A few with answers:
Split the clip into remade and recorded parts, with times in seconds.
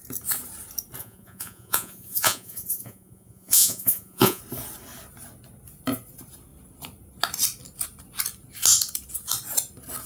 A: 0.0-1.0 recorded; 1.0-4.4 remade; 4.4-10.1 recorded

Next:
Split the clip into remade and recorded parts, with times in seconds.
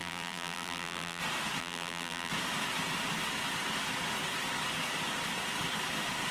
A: 0.0-1.2 remade; 1.2-1.6 recorded; 1.6-2.3 remade; 2.3-6.3 recorded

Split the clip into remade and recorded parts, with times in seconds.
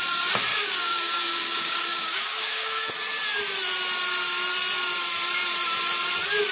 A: 0.0-0.5 recorded; 0.5-2.9 remade; 2.9-6.5 recorded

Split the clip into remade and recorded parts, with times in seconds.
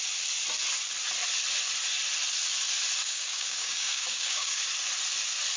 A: 0.0-3.0 recorded; 3.0-4.6 remade; 4.6-5.6 recorded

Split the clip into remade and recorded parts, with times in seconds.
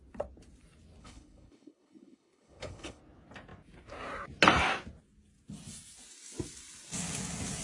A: 0.0-1.0 recorded; 1.0-3.0 remade; 3.0-7.6 recorded